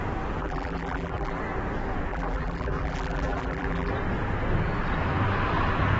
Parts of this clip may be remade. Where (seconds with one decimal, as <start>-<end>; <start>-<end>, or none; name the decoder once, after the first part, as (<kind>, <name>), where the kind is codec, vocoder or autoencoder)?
0.4-1.4 (vocoder, BigVGAN v2); 2.1-3.9